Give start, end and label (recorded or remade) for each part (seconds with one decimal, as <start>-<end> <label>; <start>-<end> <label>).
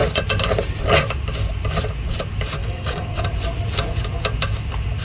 0.0-2.6 recorded; 2.6-3.2 remade; 3.2-5.0 recorded